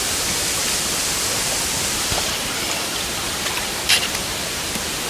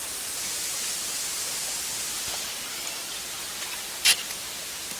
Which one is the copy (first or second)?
first